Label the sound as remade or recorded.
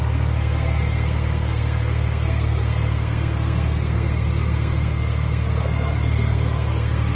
remade